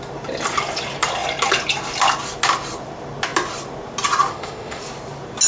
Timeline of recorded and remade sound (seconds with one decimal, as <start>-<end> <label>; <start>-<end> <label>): 0.0-4.3 recorded; 4.3-4.8 remade; 4.8-5.5 recorded